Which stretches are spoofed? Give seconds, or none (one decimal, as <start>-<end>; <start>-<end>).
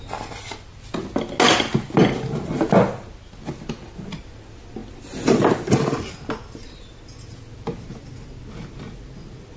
none